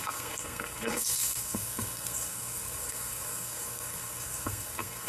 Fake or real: fake